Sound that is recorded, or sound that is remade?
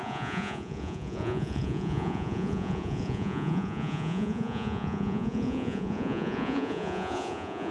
remade